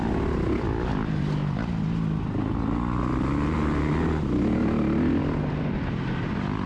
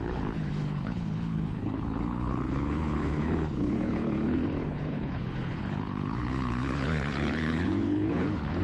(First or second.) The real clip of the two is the first